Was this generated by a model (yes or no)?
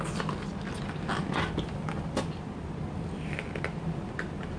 no